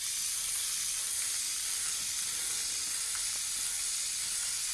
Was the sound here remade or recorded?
recorded